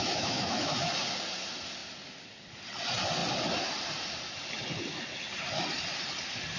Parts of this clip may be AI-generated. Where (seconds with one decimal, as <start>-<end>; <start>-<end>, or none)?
0.0-0.9